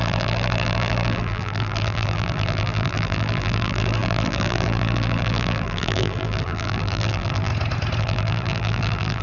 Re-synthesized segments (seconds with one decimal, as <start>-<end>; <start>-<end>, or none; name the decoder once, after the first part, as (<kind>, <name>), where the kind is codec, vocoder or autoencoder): 0.0-7.5 (vocoder, BigVGAN v2); 8.0-9.2

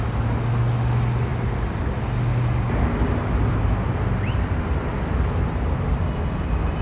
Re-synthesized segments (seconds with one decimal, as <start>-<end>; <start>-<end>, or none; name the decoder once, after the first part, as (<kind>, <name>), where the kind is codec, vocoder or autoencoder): none

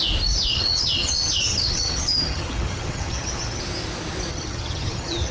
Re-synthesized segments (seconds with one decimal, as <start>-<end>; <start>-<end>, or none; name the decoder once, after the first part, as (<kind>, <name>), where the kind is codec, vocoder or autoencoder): 0.5-3.6 (vocoder, HiFi-GAN); 4.3-5.3

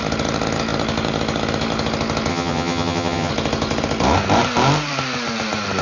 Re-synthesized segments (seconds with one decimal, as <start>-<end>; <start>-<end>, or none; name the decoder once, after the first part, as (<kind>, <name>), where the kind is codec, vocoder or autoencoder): 2.3-3.3 (vocoder, HiFi-GAN)

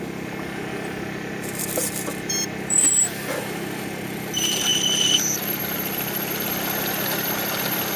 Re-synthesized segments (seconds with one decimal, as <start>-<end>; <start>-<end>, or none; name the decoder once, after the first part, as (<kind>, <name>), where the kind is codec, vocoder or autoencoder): 0.0-8.0 (vocoder, BigVGAN v2)